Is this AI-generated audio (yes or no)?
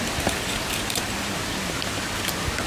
no